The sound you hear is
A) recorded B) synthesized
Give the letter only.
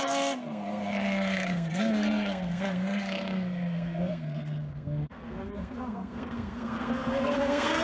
B